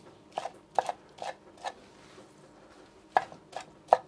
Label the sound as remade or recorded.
recorded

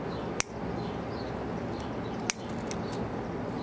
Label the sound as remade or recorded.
recorded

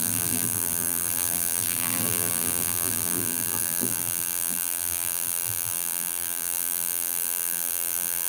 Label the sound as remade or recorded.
remade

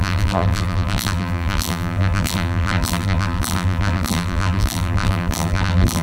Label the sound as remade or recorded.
remade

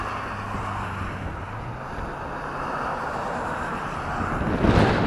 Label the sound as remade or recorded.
recorded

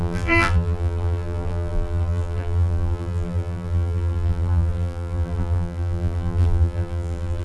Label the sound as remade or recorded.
remade